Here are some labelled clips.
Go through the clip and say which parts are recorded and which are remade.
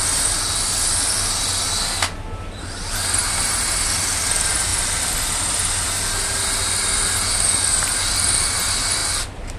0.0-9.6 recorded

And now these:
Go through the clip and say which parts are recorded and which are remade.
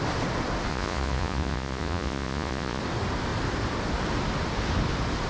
0.0-0.7 recorded; 0.7-2.8 remade; 2.8-5.3 recorded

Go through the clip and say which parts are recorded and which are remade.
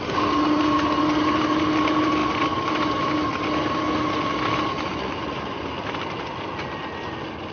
0.0-4.9 recorded; 4.9-5.7 remade; 5.7-7.5 recorded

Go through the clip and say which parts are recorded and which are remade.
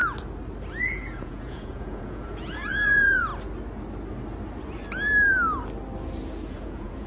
0.0-0.8 recorded; 0.8-3.3 remade; 3.3-6.5 recorded; 6.5-7.1 remade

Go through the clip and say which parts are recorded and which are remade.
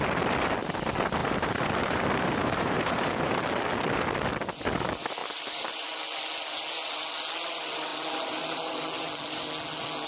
0.0-1.2 recorded; 1.2-3.4 remade; 3.4-5.2 recorded; 5.2-5.9 remade; 5.9-7.9 recorded; 7.9-8.8 remade; 8.8-10.1 recorded